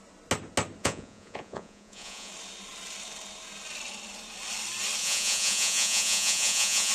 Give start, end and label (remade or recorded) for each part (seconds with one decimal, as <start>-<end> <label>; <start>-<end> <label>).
0.0-0.8 recorded; 0.8-2.3 remade; 2.3-5.0 recorded; 5.0-6.9 remade

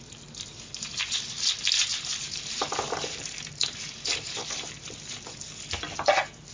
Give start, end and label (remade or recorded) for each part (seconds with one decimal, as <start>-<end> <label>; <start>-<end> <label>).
0.0-1.9 recorded; 1.9-5.5 remade; 5.5-6.5 recorded

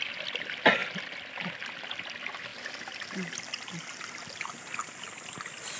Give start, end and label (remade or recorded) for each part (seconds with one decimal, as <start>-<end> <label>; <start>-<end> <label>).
0.0-5.8 recorded

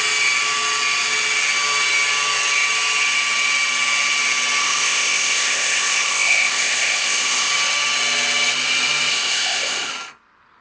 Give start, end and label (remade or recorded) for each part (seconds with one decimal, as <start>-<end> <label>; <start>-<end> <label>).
0.0-4.6 recorded; 4.6-7.5 remade; 7.5-9.1 recorded; 9.1-9.9 remade; 9.9-10.6 recorded

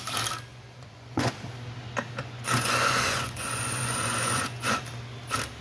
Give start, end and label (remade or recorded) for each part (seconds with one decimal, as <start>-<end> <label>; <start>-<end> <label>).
0.0-0.5 recorded; 0.5-1.3 remade; 1.3-2.2 recorded; 2.2-4.8 remade; 4.8-5.6 recorded

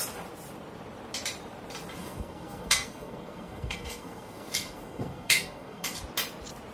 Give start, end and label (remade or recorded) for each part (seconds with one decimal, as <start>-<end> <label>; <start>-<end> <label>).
0.0-2.0 recorded; 2.0-6.0 remade; 6.0-6.7 recorded